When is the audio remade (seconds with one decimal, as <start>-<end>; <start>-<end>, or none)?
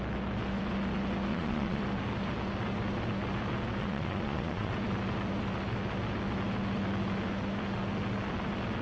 1.3-1.8; 3.8-4.7